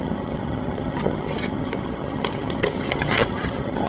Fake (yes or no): yes